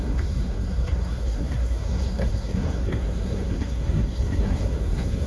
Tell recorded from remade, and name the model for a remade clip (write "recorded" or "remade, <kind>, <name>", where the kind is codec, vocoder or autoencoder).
remade, codec, SNAC